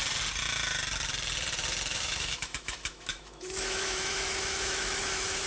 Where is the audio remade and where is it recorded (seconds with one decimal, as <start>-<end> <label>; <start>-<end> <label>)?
0.0-1.9 recorded; 1.9-5.5 remade